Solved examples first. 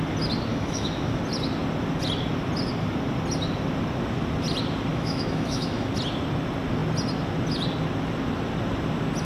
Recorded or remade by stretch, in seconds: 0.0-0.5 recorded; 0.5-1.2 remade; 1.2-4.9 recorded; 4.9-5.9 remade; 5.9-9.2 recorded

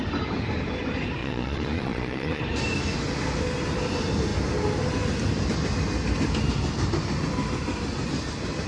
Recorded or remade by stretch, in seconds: 0.0-1.2 recorded; 1.2-2.4 remade; 2.4-8.7 recorded

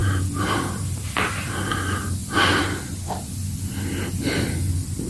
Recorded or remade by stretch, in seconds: 0.0-1.5 remade; 1.5-5.1 recorded

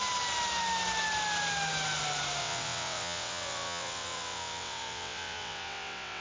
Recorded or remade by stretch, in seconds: 0.0-2.4 recorded; 2.4-6.2 remade